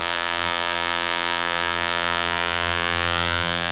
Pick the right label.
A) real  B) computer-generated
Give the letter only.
B